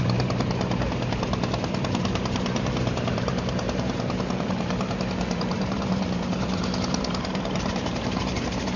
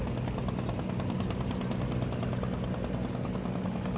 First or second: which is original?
second